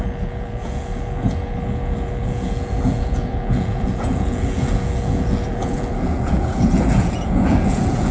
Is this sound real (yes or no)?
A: no